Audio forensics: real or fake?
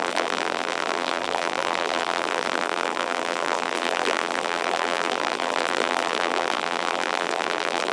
fake